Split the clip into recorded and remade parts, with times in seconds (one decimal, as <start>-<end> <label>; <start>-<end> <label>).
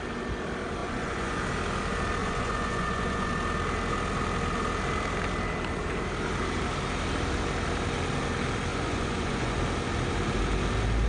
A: 0.0-0.8 recorded; 0.8-1.4 remade; 1.4-2.2 recorded; 2.2-3.3 remade; 3.3-8.7 recorded; 8.7-9.6 remade; 9.6-11.1 recorded